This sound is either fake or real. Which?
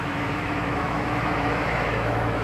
fake